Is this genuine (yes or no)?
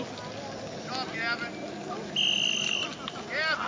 yes